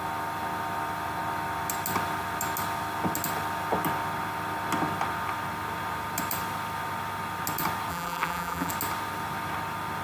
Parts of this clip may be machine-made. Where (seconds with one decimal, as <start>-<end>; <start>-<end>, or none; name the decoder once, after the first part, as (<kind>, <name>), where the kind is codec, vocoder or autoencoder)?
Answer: 7.9-8.7 (vocoder, BigVGAN v2)